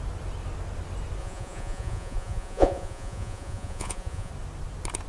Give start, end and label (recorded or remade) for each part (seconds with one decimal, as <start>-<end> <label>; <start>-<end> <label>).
0.0-1.2 recorded; 1.2-4.3 remade; 4.3-5.1 recorded